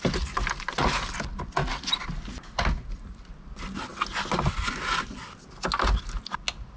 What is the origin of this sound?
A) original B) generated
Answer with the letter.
A